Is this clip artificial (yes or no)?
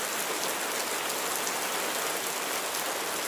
no